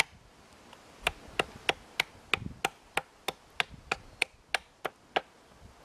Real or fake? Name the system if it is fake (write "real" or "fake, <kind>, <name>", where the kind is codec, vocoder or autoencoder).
real